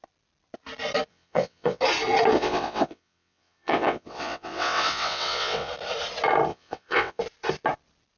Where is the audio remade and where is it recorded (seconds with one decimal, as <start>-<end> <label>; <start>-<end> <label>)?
0.0-1.1 recorded; 1.1-1.8 remade; 1.8-2.3 recorded; 2.3-5.7 remade; 5.7-6.5 recorded; 6.5-7.2 remade; 7.2-8.2 recorded